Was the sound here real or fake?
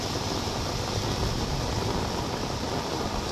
real